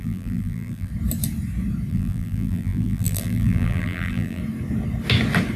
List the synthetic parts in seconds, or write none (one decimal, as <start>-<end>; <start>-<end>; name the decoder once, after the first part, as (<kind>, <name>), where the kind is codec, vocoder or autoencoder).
0.0-0.9 (vocoder, BigVGAN v2); 1.9-4.4